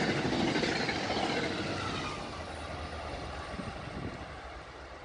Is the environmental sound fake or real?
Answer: real